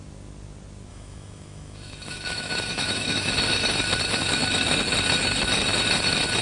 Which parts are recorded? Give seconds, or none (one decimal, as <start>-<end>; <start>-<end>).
0.0-0.9; 3.3-6.4